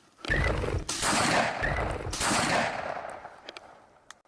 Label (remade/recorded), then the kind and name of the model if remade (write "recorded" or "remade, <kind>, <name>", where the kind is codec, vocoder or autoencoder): recorded